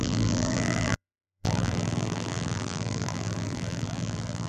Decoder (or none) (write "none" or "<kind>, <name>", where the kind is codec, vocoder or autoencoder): vocoder, BigVGAN v2